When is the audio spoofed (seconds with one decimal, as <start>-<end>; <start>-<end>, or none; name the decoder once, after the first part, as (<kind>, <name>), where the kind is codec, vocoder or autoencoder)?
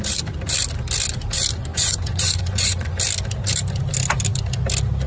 1.7-2.9 (vocoder, Vocos)